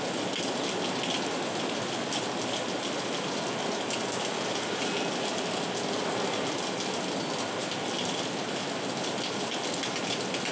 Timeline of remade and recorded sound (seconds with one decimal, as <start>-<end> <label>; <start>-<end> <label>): 0.0-10.5 recorded